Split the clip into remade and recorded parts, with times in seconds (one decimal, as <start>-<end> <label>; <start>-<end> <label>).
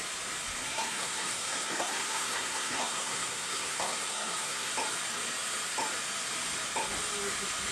0.0-0.6 recorded; 0.6-4.7 remade; 4.7-7.7 recorded